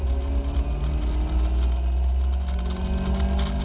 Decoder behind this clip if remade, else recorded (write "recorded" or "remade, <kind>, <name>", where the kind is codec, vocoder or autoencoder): recorded